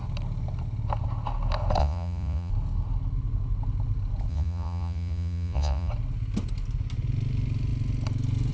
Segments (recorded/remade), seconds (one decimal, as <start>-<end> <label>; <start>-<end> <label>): 0.0-1.8 recorded; 1.8-2.5 remade; 2.5-4.3 recorded; 4.3-5.9 remade; 5.9-8.5 recorded